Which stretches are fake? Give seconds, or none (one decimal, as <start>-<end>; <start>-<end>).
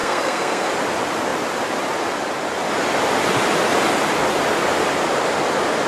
0.0-0.7